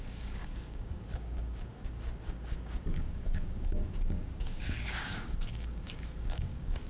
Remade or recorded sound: remade